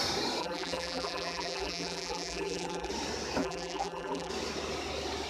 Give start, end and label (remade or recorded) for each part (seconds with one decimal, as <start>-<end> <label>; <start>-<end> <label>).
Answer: 0.0-0.4 recorded; 0.4-2.9 remade; 2.9-3.4 recorded; 3.4-4.3 remade; 4.3-5.3 recorded